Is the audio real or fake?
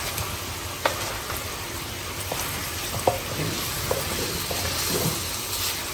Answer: real